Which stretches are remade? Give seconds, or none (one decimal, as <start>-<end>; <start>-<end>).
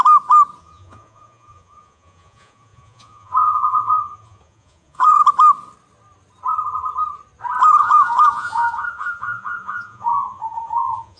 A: 0.6-5.2; 7.8-11.2